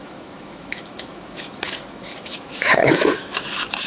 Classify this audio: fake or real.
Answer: fake